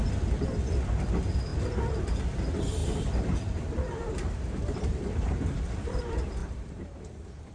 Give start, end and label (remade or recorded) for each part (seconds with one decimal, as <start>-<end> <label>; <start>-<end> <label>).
0.0-2.8 recorded; 2.8-6.0 remade; 6.0-6.4 recorded; 6.4-7.0 remade; 7.0-7.5 recorded